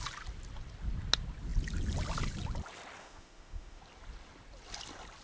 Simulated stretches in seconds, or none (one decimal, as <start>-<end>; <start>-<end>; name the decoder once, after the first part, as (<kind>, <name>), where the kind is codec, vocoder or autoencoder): 3.0-3.8 (autoencoder, DAC-VAE)